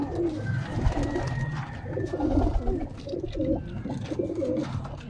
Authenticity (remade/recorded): recorded